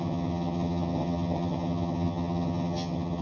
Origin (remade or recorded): remade